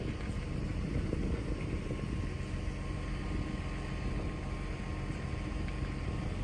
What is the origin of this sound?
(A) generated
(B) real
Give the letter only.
B